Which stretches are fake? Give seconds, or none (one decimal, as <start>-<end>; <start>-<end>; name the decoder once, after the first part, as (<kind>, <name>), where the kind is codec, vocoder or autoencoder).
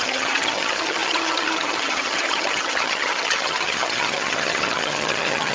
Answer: 0.0-5.5 (vocoder, HiFi-GAN)